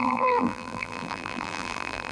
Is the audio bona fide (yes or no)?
no